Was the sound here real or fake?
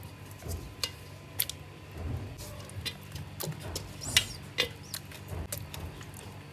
real